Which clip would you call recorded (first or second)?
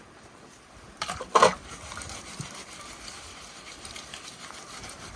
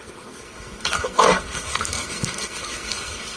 first